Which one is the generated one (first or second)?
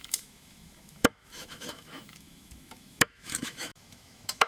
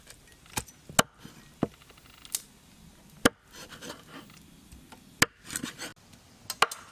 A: first